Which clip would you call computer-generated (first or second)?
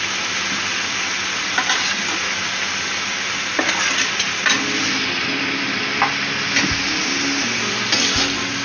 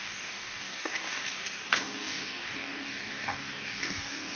second